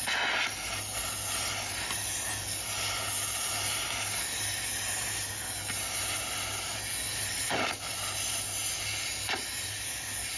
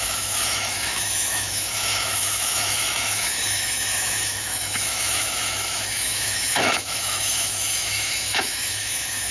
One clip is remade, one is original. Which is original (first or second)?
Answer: first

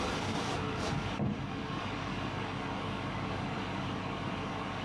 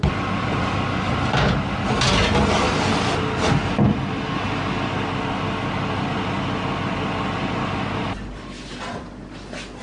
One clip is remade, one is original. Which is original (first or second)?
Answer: second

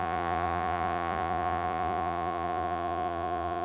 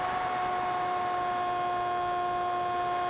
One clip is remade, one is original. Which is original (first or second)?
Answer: second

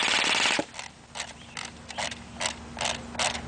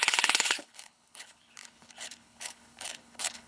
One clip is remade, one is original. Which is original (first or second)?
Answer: first